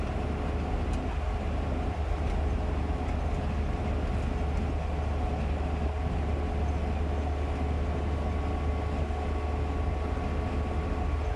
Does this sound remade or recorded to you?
recorded